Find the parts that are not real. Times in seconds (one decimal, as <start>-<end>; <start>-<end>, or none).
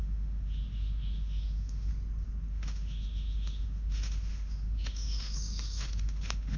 0.0-1.9; 2.5-6.6